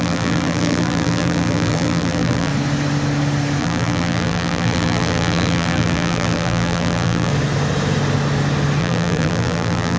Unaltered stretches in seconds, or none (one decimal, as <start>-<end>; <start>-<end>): 2.5-3.6; 7.3-8.8